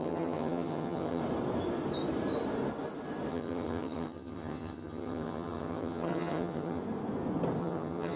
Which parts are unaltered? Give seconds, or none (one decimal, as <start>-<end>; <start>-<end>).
1.2-3.3; 6.8-7.6

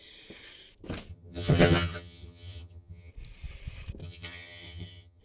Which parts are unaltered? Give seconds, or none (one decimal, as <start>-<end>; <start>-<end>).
0.0-1.1; 3.1-4.0

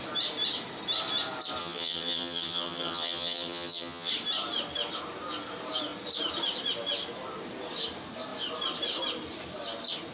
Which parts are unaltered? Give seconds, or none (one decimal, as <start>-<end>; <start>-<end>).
0.0-1.6; 4.1-10.1

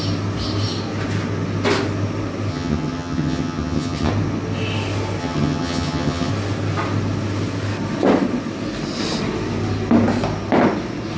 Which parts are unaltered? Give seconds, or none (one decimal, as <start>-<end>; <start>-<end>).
0.0-2.5; 4.1-5.2; 6.3-11.2

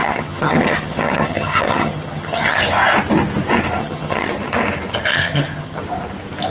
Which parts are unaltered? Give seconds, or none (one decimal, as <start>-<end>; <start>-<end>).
2.6-3.8; 4.3-5.1; 5.8-6.5